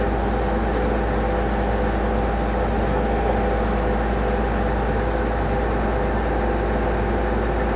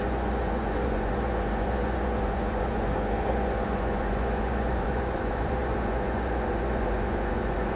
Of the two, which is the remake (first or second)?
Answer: second